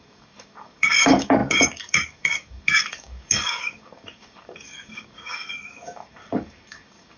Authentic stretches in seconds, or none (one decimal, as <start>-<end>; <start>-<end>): none